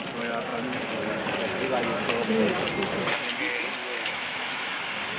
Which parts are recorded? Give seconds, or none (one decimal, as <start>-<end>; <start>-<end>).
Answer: 0.0-3.8; 4.8-5.2